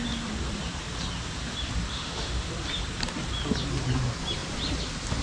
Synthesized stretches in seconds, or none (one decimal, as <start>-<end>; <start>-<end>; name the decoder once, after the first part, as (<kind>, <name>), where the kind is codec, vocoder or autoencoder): 1.9-2.5 (autoencoder, DAC-VAE)